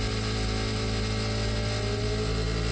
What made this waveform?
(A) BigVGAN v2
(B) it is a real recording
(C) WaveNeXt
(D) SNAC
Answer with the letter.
B